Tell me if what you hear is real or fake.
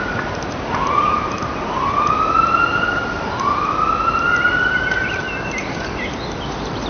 real